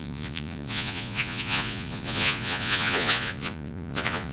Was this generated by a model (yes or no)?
yes